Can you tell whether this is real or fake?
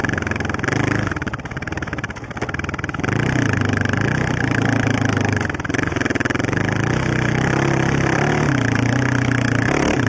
real